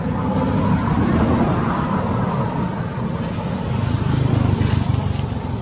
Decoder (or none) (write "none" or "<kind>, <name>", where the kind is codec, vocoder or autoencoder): none